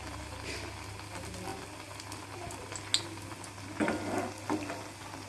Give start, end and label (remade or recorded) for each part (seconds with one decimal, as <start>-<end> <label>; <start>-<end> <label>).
0.0-5.3 recorded